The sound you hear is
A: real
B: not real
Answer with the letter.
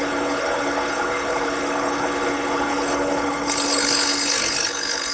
B